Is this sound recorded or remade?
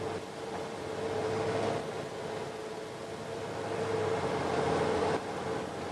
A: recorded